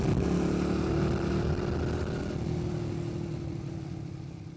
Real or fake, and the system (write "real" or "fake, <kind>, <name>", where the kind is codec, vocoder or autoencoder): real